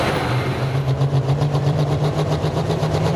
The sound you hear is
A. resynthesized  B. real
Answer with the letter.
A